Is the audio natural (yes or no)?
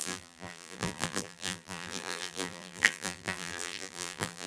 no